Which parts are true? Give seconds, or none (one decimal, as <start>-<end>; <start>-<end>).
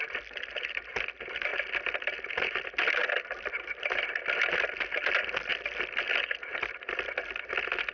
0.0-3.0; 4.0-5.5; 7.5-7.9